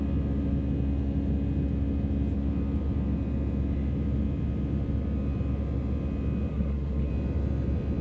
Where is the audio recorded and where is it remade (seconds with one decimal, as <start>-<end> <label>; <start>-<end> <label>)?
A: 0.0-6.5 recorded; 6.5-7.1 remade; 7.1-8.0 recorded